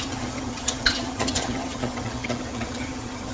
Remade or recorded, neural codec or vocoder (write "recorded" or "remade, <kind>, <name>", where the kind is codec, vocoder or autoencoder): remade, vocoder, HiFi-GAN